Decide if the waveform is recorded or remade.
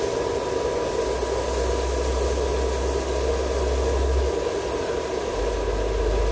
recorded